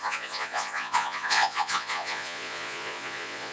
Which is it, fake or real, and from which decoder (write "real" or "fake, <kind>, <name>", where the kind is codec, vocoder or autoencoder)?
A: fake, vocoder, Vocos